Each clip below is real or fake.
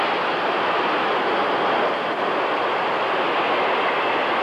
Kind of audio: real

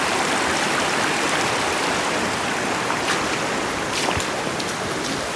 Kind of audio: real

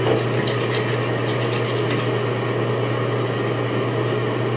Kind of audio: real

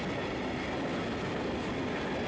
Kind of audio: real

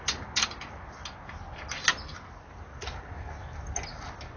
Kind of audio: real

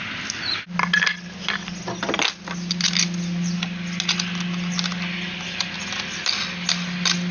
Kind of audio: real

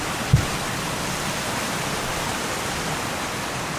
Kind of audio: real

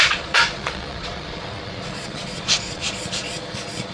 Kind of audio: fake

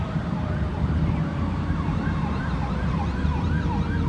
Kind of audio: fake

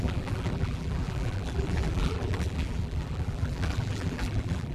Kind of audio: fake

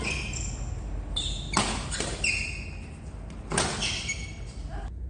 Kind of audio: real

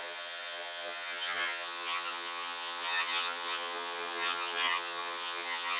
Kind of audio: fake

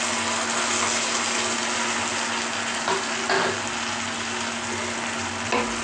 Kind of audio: real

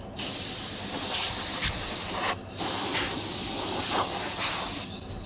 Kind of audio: real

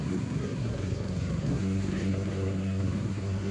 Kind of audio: fake